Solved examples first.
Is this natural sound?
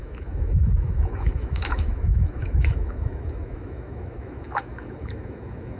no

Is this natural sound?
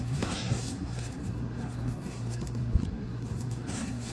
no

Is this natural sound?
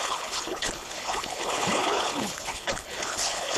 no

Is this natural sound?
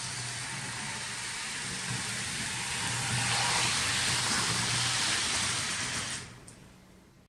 yes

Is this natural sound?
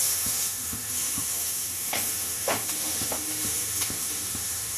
no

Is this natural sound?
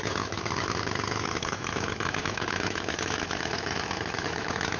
no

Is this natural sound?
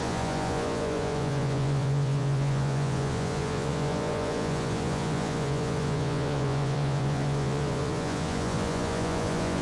no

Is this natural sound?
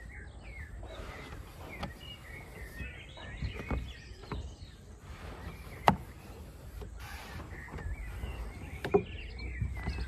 yes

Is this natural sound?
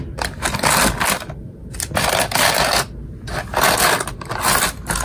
yes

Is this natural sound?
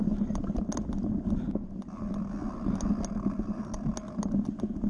yes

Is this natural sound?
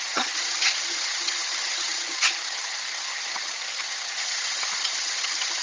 no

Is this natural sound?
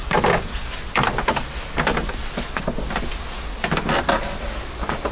yes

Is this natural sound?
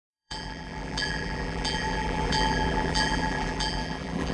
no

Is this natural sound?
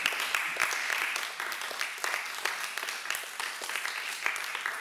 yes